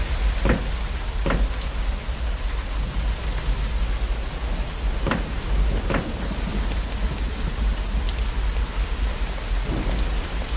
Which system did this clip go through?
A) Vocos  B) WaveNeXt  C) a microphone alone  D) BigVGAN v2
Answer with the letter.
C